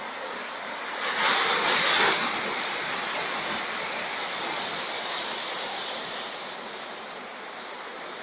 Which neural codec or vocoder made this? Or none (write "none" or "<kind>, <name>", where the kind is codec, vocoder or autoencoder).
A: none